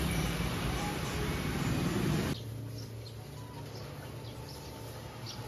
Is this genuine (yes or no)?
yes